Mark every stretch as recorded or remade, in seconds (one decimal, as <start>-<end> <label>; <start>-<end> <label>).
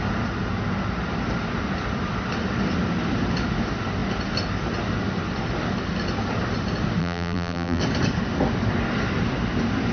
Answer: 0.0-7.0 recorded; 7.0-7.8 remade; 7.8-9.9 recorded